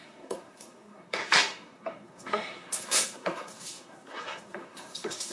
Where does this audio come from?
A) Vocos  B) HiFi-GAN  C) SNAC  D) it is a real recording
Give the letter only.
C